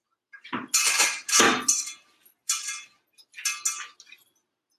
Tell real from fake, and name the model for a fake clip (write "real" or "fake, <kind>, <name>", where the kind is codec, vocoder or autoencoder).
real